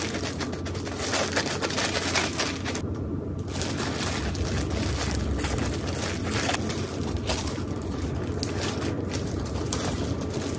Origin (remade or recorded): recorded